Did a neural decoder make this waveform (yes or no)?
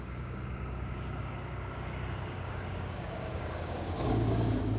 yes